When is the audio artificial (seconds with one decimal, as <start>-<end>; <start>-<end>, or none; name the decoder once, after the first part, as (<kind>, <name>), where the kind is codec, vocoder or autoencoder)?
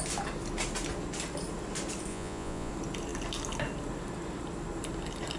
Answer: 2.1-2.7 (vocoder, Vocos)